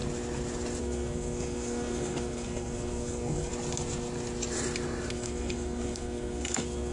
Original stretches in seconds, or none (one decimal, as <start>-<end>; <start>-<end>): 0.0-0.8; 3.5-5.1